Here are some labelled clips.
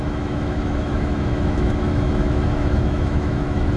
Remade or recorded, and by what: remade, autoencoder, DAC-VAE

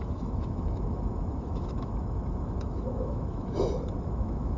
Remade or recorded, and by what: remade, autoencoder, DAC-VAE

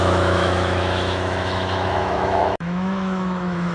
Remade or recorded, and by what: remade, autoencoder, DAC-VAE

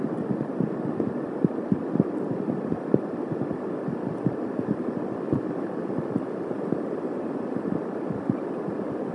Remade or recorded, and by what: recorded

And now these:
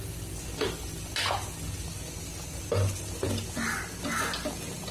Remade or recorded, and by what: recorded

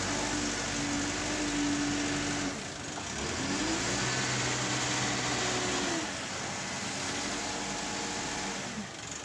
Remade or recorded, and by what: recorded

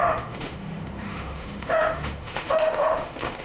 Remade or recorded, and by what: remade, autoencoder, DAC-VAE